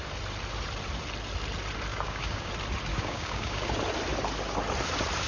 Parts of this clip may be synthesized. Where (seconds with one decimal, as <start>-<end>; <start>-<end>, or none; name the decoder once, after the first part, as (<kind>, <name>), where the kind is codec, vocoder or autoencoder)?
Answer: 1.9-2.5 (codec, DAC); 2.9-3.7